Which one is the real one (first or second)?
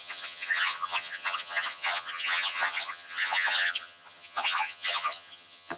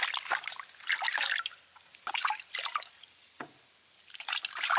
second